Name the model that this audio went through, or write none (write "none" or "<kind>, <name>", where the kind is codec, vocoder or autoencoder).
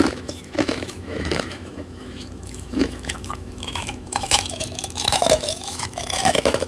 autoencoder, DAC-VAE